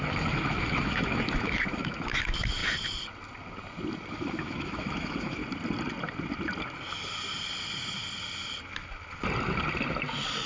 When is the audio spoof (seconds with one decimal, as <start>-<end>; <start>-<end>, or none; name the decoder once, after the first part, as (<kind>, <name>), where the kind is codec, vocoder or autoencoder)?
0.0-2.6 (autoencoder, DAC-VAE); 4.1-5.4